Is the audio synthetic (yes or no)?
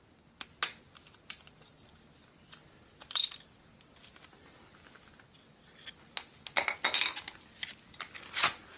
no